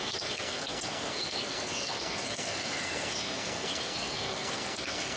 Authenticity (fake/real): fake